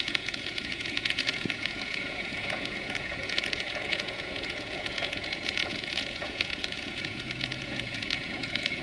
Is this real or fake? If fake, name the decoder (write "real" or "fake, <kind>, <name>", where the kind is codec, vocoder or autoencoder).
fake, vocoder, Vocos